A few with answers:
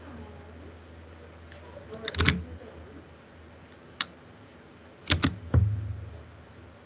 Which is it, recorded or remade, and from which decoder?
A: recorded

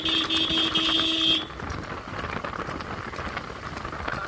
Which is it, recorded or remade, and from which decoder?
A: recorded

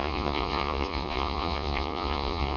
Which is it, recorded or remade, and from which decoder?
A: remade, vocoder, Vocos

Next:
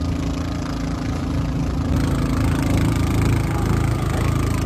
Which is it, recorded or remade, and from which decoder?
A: recorded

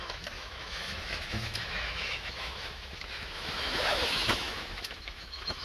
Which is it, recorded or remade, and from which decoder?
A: remade, autoencoder, DAC-VAE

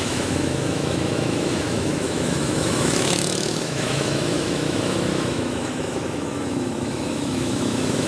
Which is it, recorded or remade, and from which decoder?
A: remade, autoencoder, DAC-VAE